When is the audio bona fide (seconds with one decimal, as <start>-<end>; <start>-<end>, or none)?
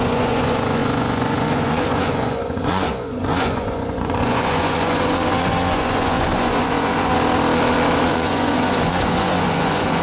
7.1-8.1